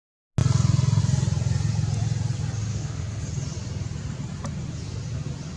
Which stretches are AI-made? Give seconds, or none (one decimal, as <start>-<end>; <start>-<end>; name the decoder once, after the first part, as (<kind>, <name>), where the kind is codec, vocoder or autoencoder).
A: 2.7-3.2 (codec, SNAC)